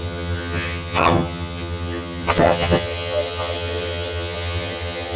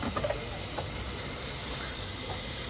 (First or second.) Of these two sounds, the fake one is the first